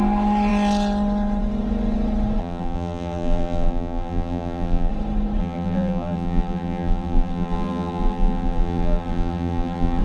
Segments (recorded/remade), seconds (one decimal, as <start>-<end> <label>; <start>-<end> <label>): 0.0-2.4 recorded; 2.4-4.9 remade; 4.9-5.4 recorded; 5.4-10.0 remade